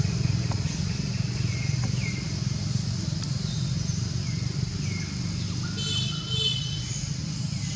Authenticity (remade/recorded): recorded